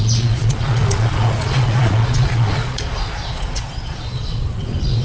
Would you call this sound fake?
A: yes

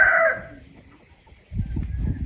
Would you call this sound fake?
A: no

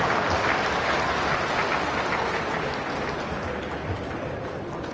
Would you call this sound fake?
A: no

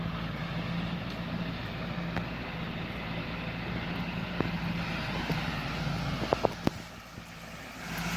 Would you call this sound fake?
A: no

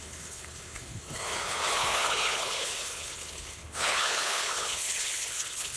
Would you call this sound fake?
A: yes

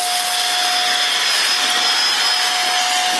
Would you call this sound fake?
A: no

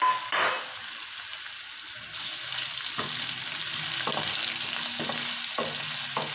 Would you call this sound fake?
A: no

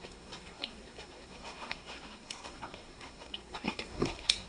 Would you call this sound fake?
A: yes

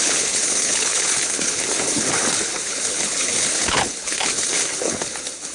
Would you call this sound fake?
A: yes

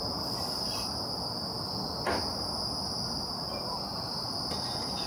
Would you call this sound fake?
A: no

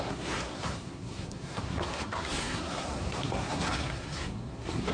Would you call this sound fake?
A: yes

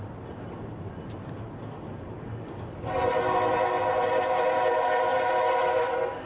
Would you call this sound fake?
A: no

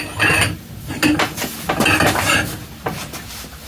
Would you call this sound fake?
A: no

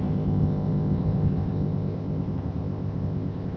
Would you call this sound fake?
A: yes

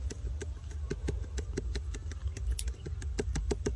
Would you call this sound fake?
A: no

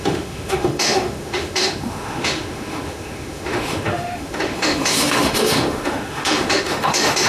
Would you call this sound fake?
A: yes